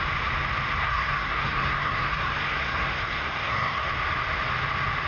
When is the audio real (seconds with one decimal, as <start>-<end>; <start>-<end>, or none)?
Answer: 0.0-0.8; 3.9-5.1